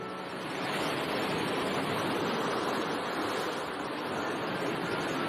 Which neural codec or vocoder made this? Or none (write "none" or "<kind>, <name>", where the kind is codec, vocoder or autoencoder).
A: none